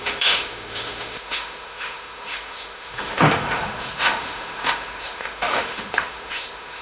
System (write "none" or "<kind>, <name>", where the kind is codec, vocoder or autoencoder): autoencoder, DAC-VAE